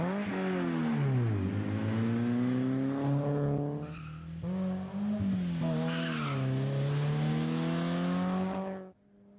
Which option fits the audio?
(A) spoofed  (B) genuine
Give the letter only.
B